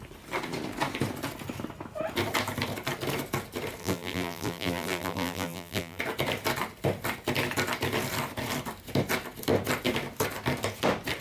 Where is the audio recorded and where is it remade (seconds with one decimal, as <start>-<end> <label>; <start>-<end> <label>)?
0.0-3.8 recorded; 3.8-6.0 remade; 6.0-11.2 recorded